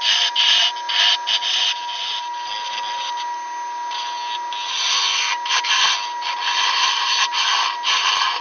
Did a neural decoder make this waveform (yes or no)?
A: no